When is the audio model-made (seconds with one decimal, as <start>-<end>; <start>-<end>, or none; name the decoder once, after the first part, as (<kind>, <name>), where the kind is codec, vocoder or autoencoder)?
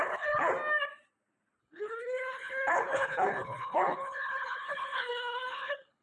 0.0-0.5 (codec, HILCodec); 1.6-6.0